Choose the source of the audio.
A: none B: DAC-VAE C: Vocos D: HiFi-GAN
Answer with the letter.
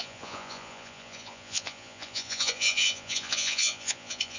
C